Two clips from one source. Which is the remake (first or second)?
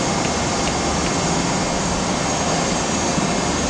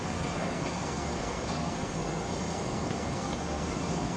second